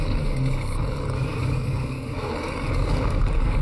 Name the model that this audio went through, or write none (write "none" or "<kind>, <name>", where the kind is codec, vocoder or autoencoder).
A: codec, DAC